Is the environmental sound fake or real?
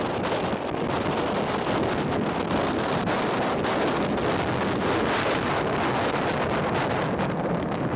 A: real